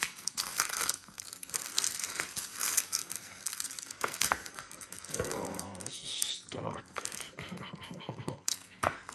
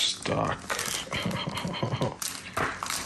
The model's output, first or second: first